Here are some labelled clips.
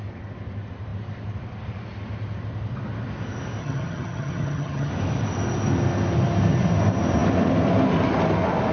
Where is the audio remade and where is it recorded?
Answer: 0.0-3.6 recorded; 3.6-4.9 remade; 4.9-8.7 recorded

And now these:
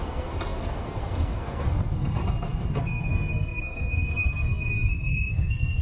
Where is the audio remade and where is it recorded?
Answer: 0.0-5.8 remade